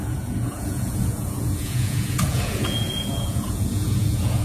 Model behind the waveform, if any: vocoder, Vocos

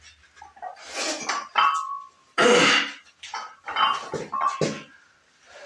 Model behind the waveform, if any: none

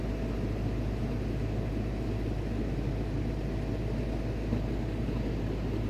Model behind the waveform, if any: none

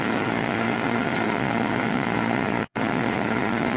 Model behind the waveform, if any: vocoder, Vocos